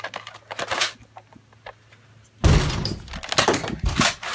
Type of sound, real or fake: real